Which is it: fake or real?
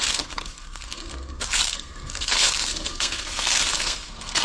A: fake